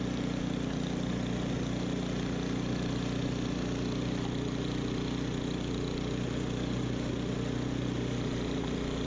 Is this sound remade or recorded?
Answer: recorded